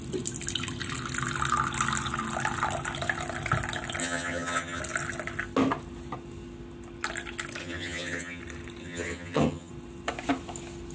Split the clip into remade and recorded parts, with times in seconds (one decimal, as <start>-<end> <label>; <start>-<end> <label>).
0.0-4.0 recorded; 4.0-4.8 remade; 4.8-7.6 recorded; 7.6-8.4 remade; 8.4-8.8 recorded; 8.8-9.7 remade; 9.7-10.9 recorded

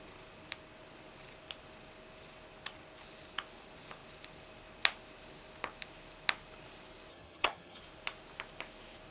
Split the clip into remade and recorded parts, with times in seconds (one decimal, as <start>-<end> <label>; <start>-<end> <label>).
0.0-7.1 recorded; 7.1-7.8 remade; 7.8-9.1 recorded

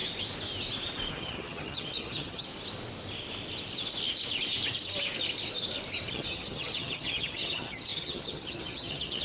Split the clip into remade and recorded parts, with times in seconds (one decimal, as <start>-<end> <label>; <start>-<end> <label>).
0.0-1.1 recorded; 1.1-2.5 remade; 2.5-6.1 recorded; 6.1-9.2 remade

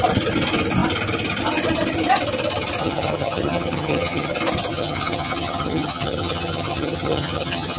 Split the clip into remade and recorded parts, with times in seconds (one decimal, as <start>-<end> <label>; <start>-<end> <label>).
0.0-2.8 recorded; 2.8-4.3 remade; 4.3-4.7 recorded; 4.7-7.8 remade

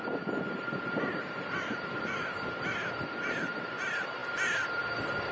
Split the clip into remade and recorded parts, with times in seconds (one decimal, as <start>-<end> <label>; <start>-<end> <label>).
0.0-5.3 recorded